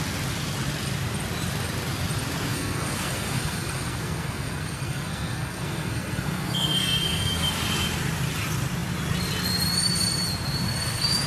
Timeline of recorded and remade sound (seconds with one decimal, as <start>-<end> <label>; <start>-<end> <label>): 0.0-2.5 recorded; 2.5-7.5 remade; 7.5-11.3 recorded